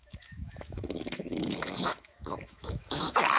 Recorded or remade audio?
remade